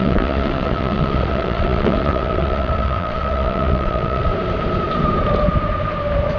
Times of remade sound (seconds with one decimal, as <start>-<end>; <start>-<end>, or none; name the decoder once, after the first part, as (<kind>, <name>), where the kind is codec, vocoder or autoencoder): 0.0-4.3 (vocoder, WaveNeXt)